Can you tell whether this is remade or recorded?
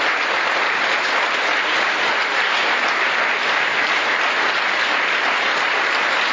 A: recorded